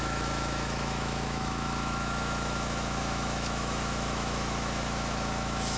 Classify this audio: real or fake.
fake